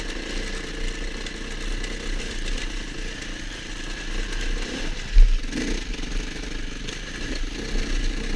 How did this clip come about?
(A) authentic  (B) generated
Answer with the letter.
A